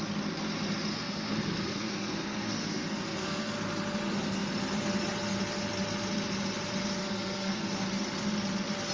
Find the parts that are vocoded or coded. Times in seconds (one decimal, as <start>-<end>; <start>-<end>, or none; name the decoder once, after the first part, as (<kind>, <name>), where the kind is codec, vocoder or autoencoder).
0.9-3.5 (codec, SNAC); 7.0-7.7